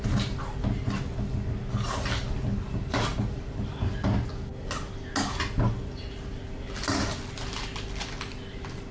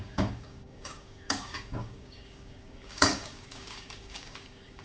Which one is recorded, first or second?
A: first